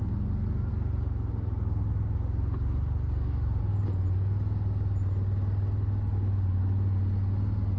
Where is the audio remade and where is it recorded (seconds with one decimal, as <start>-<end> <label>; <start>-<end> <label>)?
0.0-7.8 recorded